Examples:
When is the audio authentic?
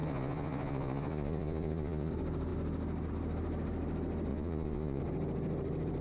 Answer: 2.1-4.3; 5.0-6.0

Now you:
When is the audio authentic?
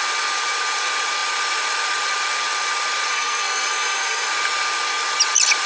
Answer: 0.0-3.1; 4.3-5.7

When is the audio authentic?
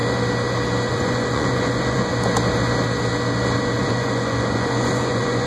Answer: 0.0-0.9; 2.1-3.8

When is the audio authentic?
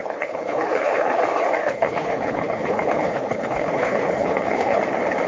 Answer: 1.2-1.6; 4.8-5.3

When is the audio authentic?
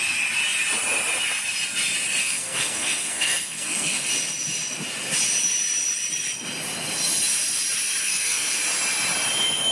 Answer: 0.0-2.2; 4.1-8.0; 8.6-9.7